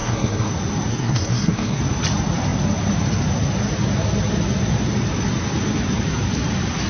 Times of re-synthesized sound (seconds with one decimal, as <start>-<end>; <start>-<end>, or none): 0.0-0.5; 0.9-1.8